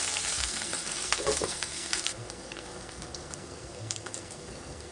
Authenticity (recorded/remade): remade